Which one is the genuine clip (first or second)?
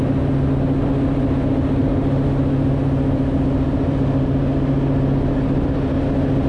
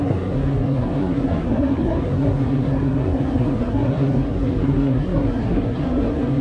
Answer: first